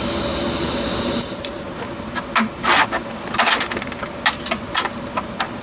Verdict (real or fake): real